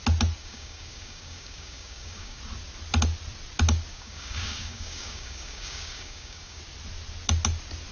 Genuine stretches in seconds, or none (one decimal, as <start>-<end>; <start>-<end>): 0.0-0.4; 2.4-3.9; 6.6-7.9